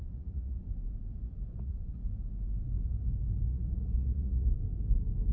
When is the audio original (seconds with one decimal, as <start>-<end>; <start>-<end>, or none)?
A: 0.6-1.6; 2.0-3.4; 4.5-5.3